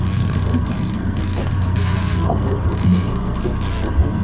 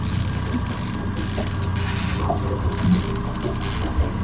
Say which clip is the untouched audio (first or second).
second